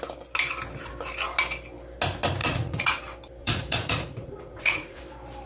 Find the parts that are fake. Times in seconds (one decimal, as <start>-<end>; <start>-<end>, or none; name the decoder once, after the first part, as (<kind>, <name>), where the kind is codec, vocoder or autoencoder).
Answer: 2.4-3.0 (vocoder, Vocos); 3.4-5.0